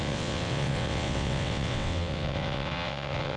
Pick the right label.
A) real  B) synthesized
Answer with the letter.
B